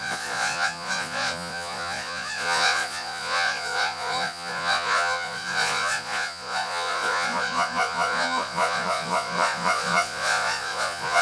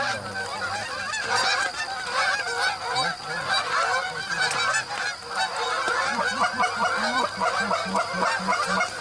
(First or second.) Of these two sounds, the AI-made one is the first